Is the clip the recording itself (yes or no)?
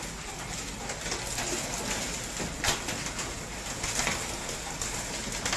yes